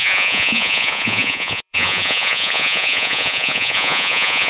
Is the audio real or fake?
fake